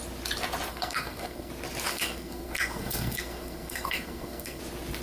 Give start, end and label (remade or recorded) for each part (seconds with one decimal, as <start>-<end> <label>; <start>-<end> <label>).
0.0-0.7 recorded; 0.7-1.5 remade; 1.5-1.9 recorded; 1.9-4.6 remade; 4.6-5.0 recorded